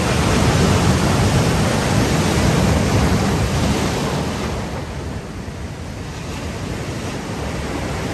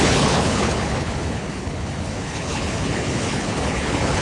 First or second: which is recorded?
first